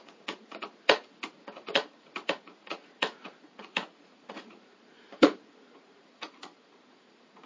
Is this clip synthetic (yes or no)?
yes